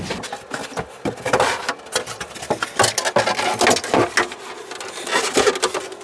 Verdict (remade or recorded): recorded